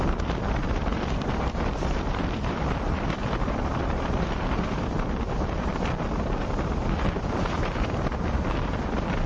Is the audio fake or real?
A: fake